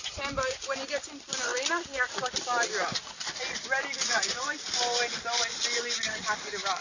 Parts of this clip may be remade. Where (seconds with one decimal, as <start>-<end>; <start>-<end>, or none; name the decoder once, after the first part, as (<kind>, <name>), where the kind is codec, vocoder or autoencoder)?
none